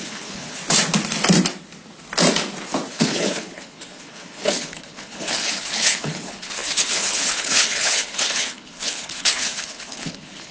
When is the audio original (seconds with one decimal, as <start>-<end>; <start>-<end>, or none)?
0.6-2.9